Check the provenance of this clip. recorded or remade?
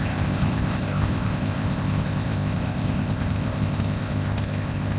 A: remade